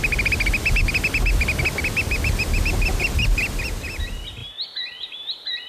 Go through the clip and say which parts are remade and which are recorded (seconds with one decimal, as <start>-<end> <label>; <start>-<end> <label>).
0.0-5.7 recorded